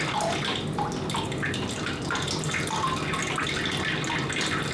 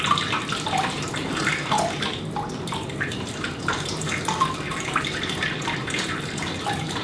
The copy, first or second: second